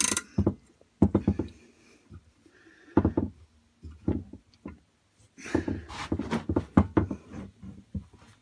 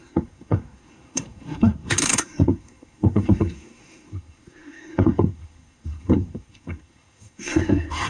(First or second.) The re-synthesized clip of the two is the second